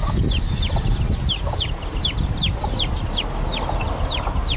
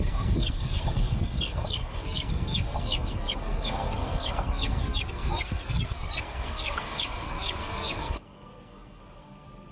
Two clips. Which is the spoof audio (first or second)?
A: second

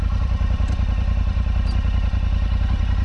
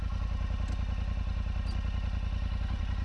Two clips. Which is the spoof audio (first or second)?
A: first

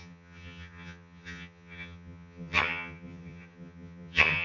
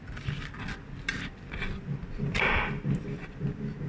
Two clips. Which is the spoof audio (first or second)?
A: first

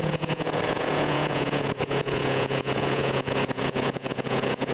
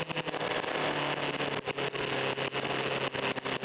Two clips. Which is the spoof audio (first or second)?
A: first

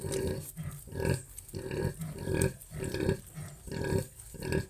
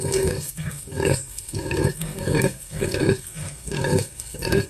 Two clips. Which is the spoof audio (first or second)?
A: second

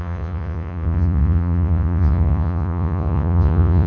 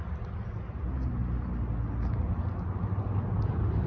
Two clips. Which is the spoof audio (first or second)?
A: first